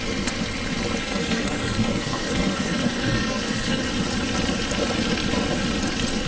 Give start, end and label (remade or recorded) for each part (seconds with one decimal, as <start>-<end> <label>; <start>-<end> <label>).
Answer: 0.0-1.0 recorded; 1.0-3.8 remade; 3.8-6.3 recorded